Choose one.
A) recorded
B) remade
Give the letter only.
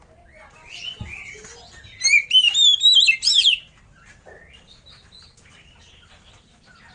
A